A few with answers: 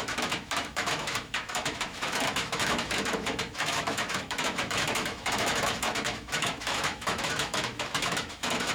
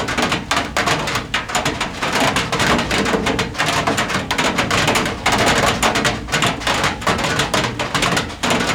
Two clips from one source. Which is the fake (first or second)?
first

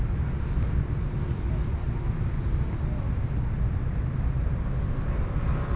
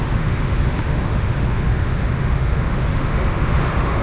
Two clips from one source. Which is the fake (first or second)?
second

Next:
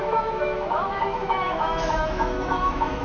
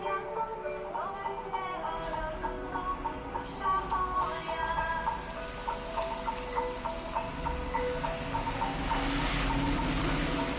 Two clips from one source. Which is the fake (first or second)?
first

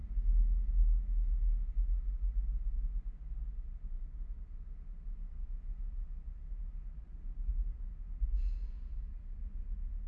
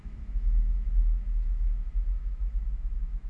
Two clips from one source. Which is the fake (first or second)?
second